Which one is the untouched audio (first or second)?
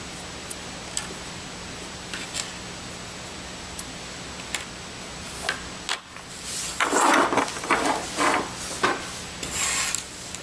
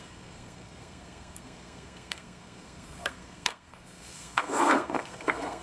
first